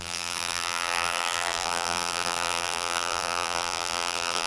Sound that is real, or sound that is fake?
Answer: fake